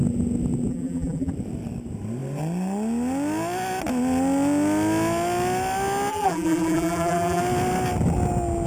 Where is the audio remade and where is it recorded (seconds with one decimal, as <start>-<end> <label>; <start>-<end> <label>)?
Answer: 0.0-0.7 recorded; 0.7-1.3 remade; 1.3-6.1 recorded; 6.1-7.4 remade; 7.4-8.7 recorded